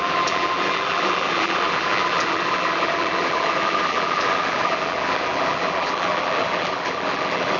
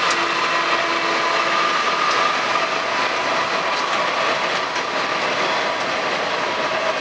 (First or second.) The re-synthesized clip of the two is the first